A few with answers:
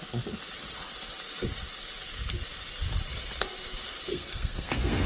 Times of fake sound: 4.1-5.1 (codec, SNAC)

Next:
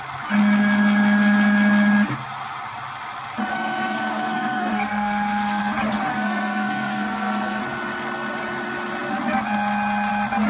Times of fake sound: 3.5-5.6 (codec, SNAC); 6.1-7.6

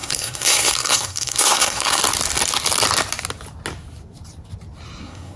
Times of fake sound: 0.0-2.0 (codec, SNAC); 5.0-5.4

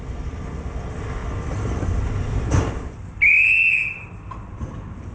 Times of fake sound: none

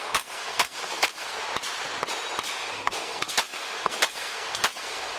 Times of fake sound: 0.0-1.4 (codec, SNAC); 2.7-5.2

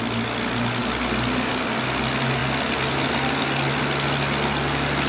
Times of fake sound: none

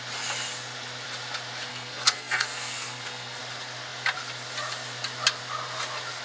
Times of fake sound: 1.7-3.4 (codec, SNAC)